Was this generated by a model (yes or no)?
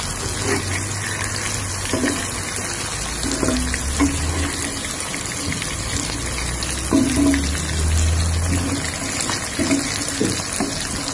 no